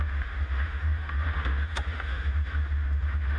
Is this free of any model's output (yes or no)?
no